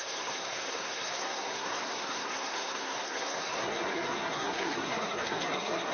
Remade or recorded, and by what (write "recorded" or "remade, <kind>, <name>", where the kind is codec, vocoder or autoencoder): remade, codec, SNAC